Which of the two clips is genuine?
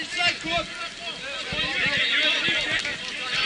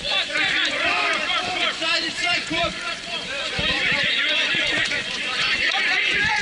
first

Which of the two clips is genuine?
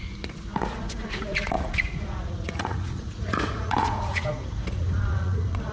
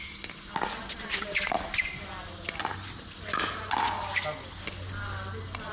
second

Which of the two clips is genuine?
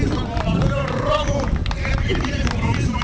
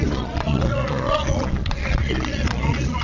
first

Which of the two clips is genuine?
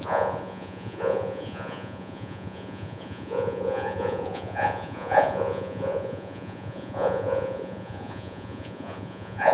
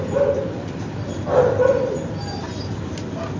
second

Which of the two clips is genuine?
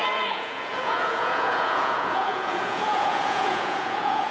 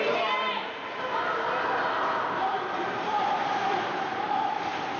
second